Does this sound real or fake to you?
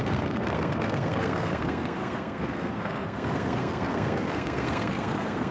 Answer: fake